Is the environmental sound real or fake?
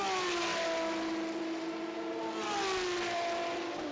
real